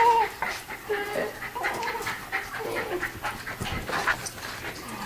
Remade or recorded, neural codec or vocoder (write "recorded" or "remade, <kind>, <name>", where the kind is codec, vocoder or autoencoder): recorded